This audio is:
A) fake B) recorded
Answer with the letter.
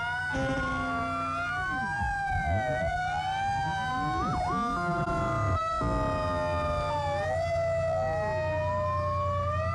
B